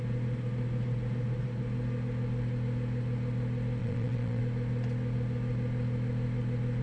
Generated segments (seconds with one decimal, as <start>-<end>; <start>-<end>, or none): 3.8-4.4